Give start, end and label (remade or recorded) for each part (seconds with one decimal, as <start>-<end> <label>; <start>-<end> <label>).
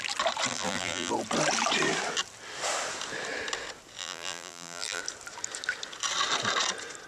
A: 0.0-0.5 recorded; 0.5-1.1 remade; 1.1-4.0 recorded; 4.0-5.0 remade; 5.0-7.1 recorded